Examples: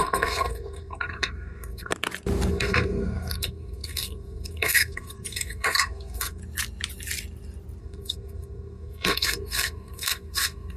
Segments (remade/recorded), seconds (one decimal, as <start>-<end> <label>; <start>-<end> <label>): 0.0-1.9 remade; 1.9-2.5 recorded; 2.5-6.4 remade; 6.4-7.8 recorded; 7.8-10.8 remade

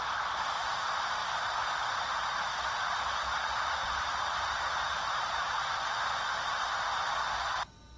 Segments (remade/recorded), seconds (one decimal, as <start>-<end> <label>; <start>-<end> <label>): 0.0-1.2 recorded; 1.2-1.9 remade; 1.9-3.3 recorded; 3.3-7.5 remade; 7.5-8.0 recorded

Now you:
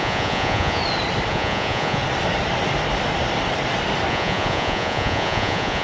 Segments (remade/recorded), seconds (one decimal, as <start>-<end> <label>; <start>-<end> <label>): 0.0-0.8 remade; 0.8-1.3 recorded; 1.3-2.0 remade; 2.0-4.1 recorded; 4.1-5.8 remade

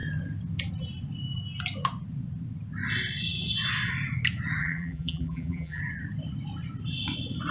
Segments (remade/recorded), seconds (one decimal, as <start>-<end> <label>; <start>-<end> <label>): 0.0-4.6 recorded; 4.6-5.8 remade; 5.8-7.5 recorded

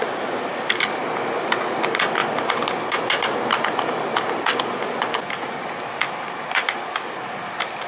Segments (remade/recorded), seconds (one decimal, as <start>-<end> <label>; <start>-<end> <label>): 0.0-7.9 recorded

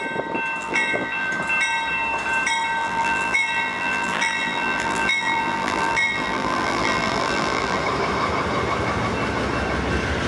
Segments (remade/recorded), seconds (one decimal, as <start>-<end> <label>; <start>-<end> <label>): 0.0-0.6 recorded; 0.6-1.3 remade; 1.3-2.8 recorded; 2.8-7.8 remade; 7.8-10.3 recorded

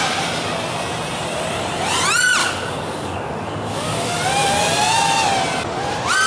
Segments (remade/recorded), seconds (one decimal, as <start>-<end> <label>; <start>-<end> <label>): 0.0-2.4 recorded; 2.4-4.2 remade; 4.2-6.3 recorded